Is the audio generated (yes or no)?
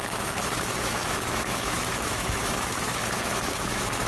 yes